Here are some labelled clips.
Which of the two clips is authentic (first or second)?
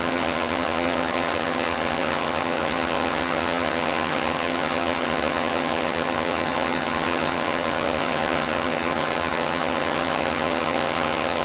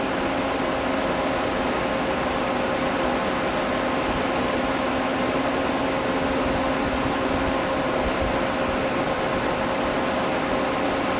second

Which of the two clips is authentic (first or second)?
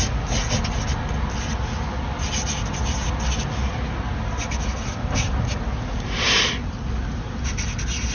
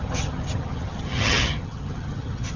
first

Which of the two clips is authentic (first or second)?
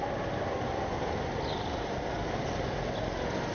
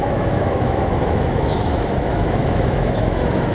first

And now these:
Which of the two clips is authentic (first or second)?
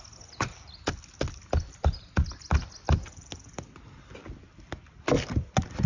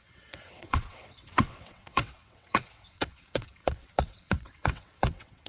first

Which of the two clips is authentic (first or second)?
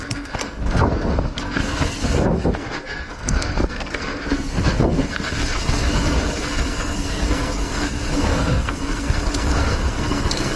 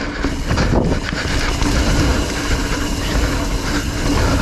second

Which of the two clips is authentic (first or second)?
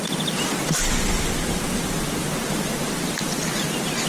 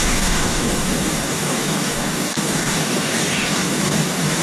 first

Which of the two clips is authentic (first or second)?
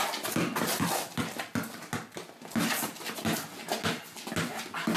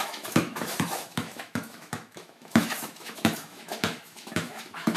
first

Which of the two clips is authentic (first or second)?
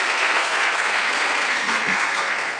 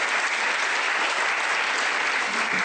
second